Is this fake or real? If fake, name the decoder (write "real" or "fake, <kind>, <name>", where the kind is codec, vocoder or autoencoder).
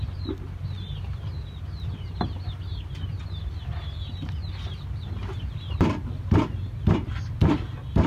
real